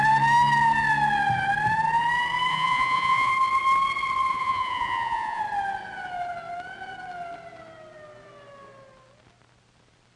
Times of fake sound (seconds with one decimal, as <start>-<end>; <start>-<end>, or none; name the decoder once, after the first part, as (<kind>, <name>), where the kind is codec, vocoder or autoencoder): 2.5-3.3 (vocoder, Vocos); 4.3-5.4